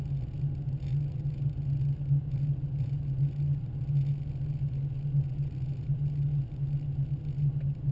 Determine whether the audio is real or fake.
real